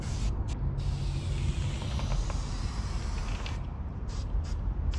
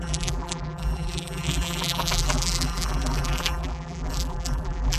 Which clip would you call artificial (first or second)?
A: second